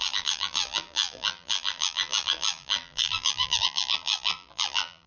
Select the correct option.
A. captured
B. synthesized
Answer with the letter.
B